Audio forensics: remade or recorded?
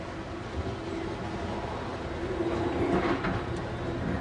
recorded